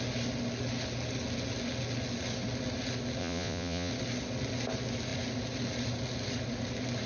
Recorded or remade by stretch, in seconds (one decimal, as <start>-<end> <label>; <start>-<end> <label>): 0.0-3.2 recorded; 3.2-3.9 remade; 3.9-7.1 recorded